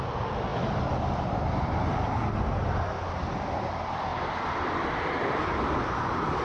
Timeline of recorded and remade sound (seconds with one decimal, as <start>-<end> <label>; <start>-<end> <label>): 0.0-4.1 remade; 4.1-4.9 recorded; 4.9-6.4 remade